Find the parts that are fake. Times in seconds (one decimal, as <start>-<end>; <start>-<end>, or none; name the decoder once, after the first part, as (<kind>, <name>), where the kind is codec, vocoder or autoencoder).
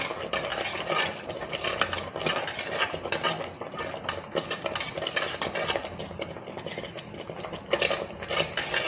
0.5-1.2 (vocoder, BigVGAN v2)